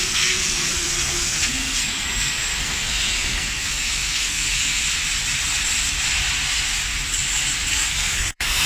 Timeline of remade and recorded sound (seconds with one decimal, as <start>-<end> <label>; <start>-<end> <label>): 0.0-4.8 remade; 4.8-7.7 recorded; 7.7-8.7 remade